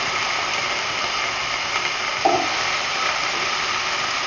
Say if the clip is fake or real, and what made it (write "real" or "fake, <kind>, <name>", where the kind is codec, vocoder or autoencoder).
fake, vocoder, BigVGAN v2